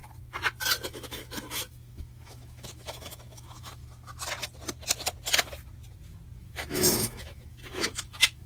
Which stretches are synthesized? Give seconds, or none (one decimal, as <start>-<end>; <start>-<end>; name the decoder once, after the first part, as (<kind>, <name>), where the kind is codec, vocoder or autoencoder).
0.9-3.8 (autoencoder, DAC-VAE); 6.4-8.5